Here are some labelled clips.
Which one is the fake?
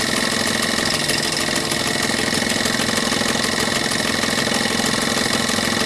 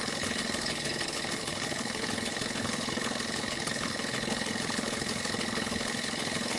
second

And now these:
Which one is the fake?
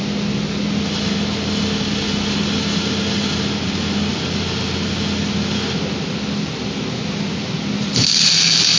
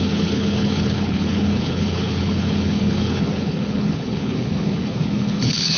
second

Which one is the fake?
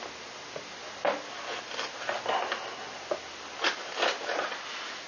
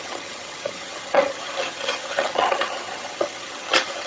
second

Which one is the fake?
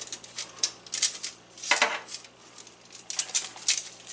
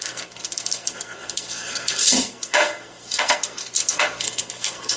second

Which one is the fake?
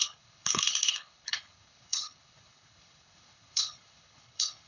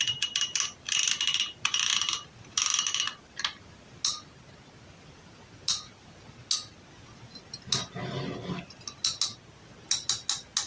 first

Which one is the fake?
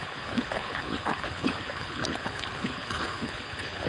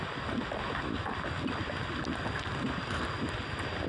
first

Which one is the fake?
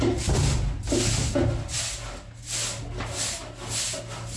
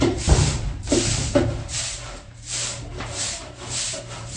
second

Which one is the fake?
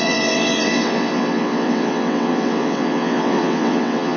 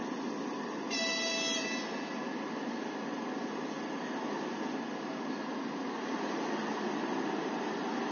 first